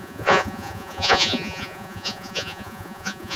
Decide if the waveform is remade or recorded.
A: remade